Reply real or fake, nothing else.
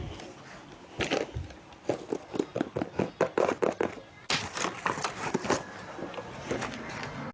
real